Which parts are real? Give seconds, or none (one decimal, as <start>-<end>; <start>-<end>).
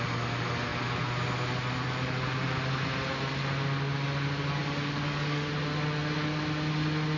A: 0.0-4.6; 5.5-7.2